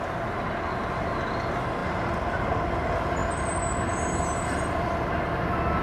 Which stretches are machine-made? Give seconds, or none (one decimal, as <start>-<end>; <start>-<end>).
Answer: none